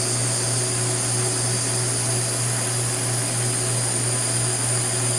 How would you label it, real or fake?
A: real